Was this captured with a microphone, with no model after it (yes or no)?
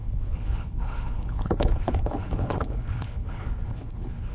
no